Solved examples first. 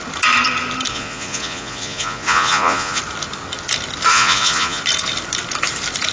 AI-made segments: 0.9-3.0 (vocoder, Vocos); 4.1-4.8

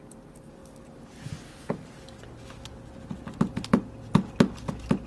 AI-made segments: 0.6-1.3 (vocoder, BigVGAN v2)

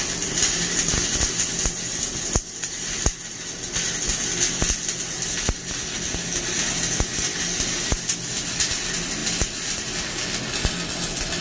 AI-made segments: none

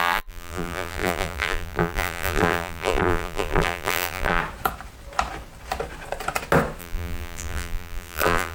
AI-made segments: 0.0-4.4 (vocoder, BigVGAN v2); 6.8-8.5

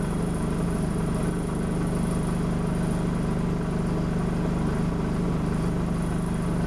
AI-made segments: 0.0-1.2 (vocoder, BigVGAN v2); 4.9-6.7